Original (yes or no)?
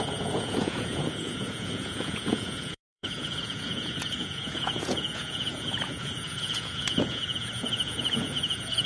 no